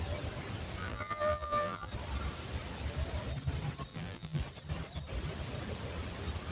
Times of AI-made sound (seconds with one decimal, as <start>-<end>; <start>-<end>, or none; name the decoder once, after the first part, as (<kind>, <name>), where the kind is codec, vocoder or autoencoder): 0.8-1.9 (vocoder, BigVGAN v2); 3.9-4.4